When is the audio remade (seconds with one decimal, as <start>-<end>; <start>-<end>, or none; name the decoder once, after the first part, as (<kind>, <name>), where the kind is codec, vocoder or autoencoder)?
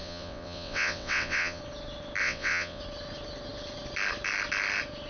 0.0-1.6 (vocoder, WaveNeXt); 2.2-2.8